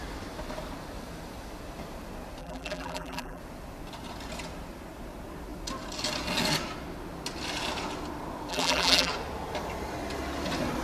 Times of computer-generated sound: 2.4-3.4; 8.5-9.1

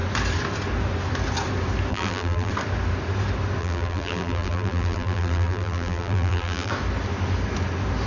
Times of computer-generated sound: 1.9-2.5; 3.6-6.7

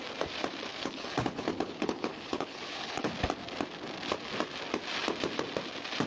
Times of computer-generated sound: 0.7-3.1

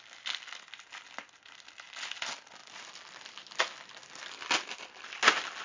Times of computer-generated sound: none